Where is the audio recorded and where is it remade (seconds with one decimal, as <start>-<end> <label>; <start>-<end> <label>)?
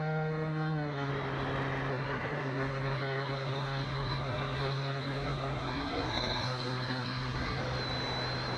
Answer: 0.0-1.1 remade; 1.1-1.9 recorded; 1.9-7.6 remade; 7.6-8.6 recorded